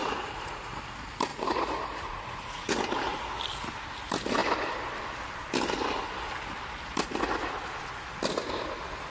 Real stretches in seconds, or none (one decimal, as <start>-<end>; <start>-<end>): 0.8-1.3; 2.8-9.1